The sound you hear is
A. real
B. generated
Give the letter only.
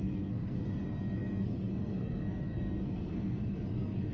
B